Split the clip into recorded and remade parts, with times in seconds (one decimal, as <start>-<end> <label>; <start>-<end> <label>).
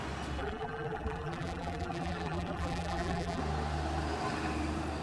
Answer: 0.0-0.4 recorded; 0.4-3.4 remade; 3.4-5.0 recorded